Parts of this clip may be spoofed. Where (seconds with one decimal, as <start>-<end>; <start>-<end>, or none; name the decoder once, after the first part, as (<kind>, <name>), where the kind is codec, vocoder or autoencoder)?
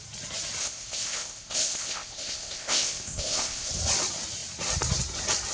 0.6-3.7 (codec, ZipCodec)